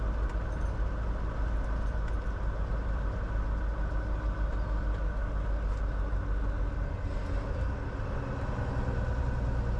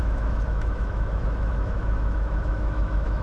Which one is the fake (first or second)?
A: second